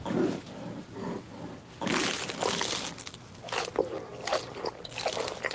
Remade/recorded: recorded